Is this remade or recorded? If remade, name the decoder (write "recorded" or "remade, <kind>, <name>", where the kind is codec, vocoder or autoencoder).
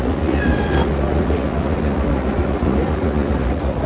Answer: remade, vocoder, Vocos